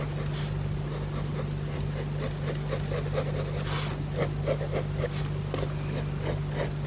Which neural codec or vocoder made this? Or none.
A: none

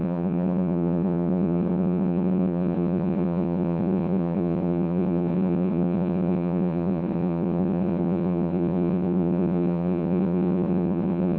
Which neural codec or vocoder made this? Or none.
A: vocoder, Vocos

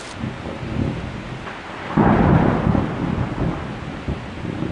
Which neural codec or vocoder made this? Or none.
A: none